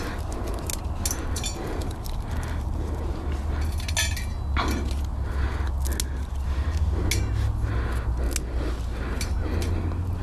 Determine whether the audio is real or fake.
real